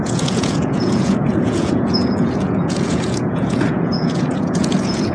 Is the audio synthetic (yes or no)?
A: yes